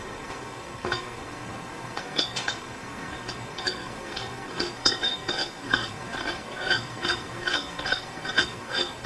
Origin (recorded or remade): remade